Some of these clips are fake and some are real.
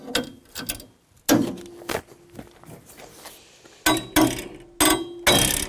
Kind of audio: real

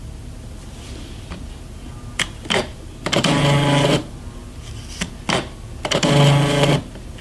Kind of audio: real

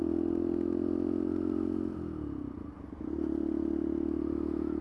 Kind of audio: real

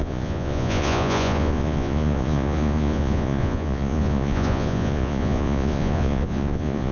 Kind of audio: fake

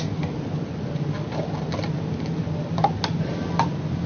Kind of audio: real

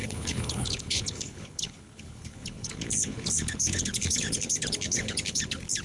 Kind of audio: fake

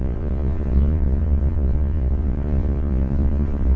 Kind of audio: fake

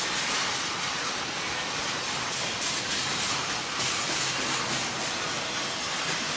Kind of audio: real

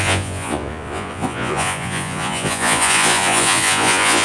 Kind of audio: fake